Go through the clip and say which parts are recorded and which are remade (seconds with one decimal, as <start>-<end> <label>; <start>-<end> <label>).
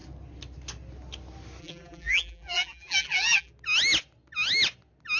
0.0-1.6 recorded; 1.6-3.5 remade; 3.5-5.2 recorded